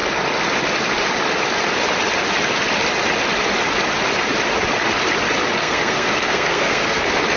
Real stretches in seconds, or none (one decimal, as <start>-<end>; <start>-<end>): 0.0-5.6; 7.0-7.4